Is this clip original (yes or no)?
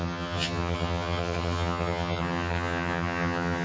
no